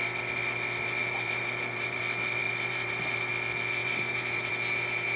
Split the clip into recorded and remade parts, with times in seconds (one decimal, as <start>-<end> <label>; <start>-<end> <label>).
0.0-1.0 recorded; 1.0-2.0 remade; 2.0-2.4 recorded; 2.4-3.3 remade; 3.3-3.8 recorded; 3.8-4.5 remade; 4.5-5.2 recorded